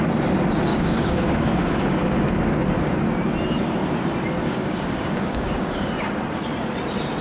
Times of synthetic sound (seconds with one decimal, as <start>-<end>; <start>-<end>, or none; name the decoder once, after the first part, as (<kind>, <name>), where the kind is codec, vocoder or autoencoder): 0.7-2.4 (codec, DAC); 4.4-5.9